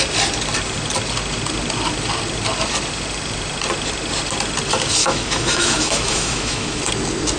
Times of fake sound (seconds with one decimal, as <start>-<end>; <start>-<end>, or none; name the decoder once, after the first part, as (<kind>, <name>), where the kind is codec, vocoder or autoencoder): 5.0-6.8 (autoencoder, DAC-VAE)